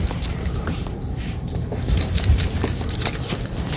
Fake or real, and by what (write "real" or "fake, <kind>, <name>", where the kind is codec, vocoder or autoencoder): fake, vocoder, BigVGAN v2